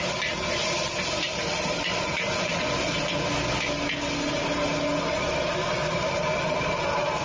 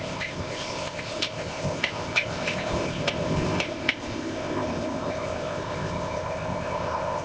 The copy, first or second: second